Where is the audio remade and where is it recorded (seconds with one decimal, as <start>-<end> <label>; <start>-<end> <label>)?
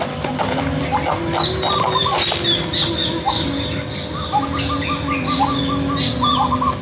0.0-6.8 recorded